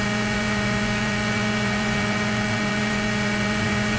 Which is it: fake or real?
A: fake